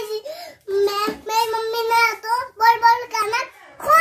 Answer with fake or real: real